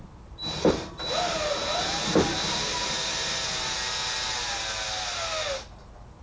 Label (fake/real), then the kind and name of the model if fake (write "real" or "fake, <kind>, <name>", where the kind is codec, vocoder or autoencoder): real